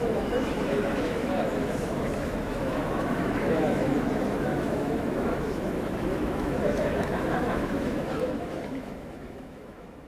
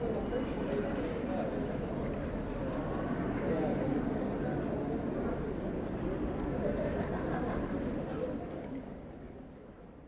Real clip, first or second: second